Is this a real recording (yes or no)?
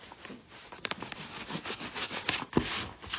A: yes